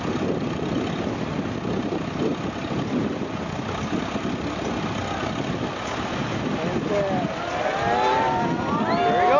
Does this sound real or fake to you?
real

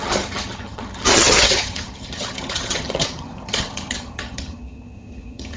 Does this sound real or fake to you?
fake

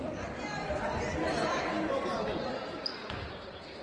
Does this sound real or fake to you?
real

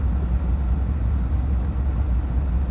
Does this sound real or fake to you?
real